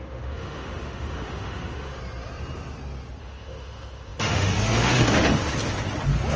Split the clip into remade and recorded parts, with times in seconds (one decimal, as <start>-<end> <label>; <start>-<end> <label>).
0.0-2.0 remade; 2.0-3.2 recorded; 3.2-5.4 remade; 5.4-6.4 recorded